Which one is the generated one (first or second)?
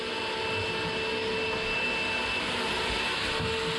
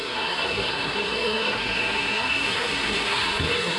second